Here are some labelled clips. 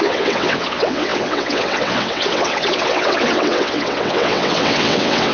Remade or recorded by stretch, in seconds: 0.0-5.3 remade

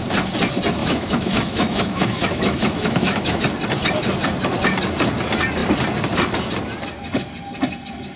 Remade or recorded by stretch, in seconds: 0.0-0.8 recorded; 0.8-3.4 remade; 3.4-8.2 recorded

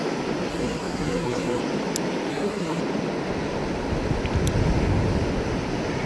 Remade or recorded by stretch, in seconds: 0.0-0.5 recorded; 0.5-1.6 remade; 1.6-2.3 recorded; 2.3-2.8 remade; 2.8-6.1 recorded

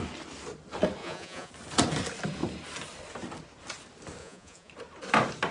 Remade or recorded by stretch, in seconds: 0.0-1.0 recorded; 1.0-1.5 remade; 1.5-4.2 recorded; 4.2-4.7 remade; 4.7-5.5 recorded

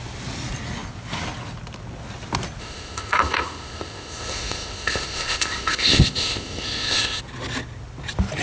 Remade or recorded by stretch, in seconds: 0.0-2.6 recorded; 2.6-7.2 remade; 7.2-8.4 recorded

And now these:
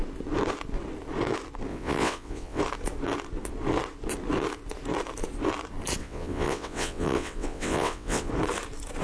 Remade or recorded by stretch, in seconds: 0.0-1.7 recorded; 1.7-2.6 remade; 2.6-6.0 recorded; 6.0-8.3 remade; 8.3-9.0 recorded

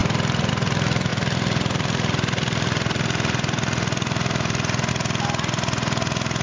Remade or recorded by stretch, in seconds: 0.0-6.4 recorded